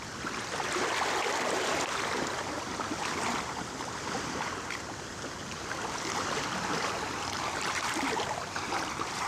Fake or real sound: real